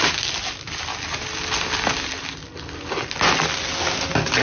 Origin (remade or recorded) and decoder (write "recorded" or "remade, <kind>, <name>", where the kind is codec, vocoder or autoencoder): recorded